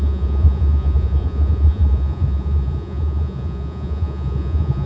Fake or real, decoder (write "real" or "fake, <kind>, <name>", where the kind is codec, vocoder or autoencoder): fake, vocoder, Vocos